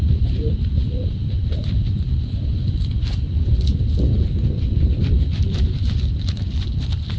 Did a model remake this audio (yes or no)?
no